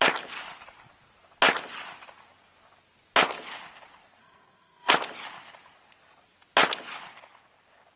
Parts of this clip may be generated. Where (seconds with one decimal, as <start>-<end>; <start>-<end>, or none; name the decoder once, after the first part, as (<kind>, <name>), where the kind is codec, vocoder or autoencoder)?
4.2-4.9 (codec, SNAC)